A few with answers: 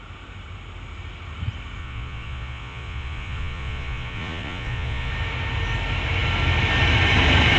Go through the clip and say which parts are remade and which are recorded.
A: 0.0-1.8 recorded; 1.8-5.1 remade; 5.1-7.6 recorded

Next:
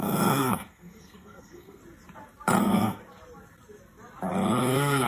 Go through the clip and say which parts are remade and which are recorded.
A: 0.0-1.8 remade; 1.8-2.6 recorded; 2.6-3.0 remade; 3.0-4.6 recorded; 4.6-5.1 remade

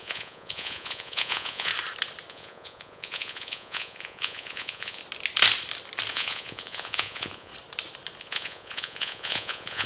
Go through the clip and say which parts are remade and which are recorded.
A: 0.0-1.7 remade; 1.7-2.3 recorded; 2.3-5.0 remade; 5.0-6.1 recorded; 6.1-7.5 remade; 7.5-8.2 recorded; 8.2-9.9 remade

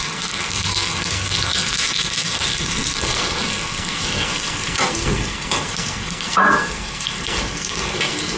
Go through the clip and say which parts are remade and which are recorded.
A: 0.0-8.4 remade

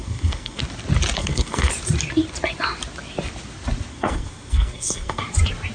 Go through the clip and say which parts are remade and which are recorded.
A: 0.0-0.6 remade; 0.6-1.2 recorded; 1.2-1.7 remade; 1.7-3.9 recorded; 3.9-5.2 remade; 5.2-5.7 recorded

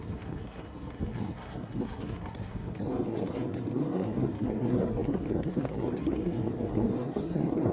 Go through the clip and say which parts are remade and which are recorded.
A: 0.0-7.7 remade

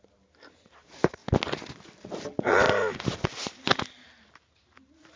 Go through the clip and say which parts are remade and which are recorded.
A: 0.0-1.2 remade; 1.2-4.3 recorded; 4.3-5.2 remade